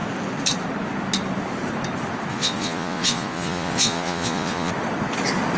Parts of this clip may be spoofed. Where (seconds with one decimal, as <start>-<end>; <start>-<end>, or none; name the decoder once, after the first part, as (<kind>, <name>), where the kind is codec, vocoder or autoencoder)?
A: 2.3-4.7 (vocoder, Vocos)